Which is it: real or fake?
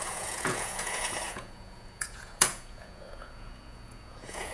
fake